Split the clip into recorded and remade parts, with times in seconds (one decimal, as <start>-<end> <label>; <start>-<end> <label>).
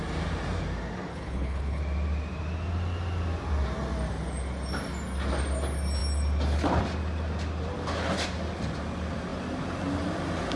0.0-1.1 recorded; 1.1-1.8 remade; 1.8-10.6 recorded